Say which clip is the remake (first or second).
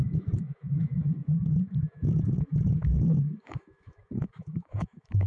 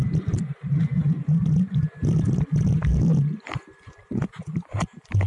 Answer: first